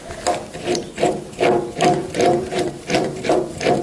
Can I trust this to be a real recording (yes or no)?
yes